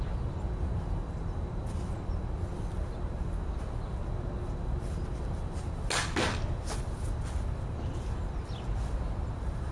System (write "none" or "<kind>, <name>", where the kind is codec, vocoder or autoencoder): none